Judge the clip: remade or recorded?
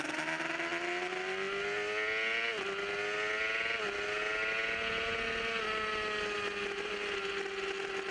recorded